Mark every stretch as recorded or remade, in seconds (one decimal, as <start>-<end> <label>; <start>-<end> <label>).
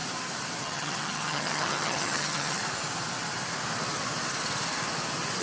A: 0.0-0.6 recorded; 0.6-2.6 remade; 2.6-5.4 recorded